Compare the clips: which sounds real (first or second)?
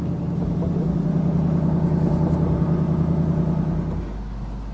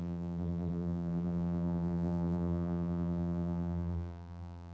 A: first